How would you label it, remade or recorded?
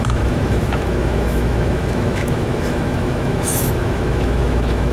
remade